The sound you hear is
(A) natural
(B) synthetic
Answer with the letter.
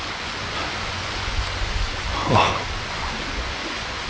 B